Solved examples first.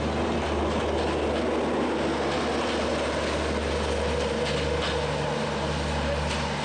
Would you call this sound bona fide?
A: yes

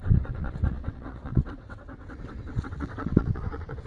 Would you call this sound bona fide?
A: no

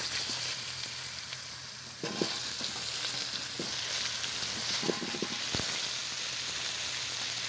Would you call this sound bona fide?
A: yes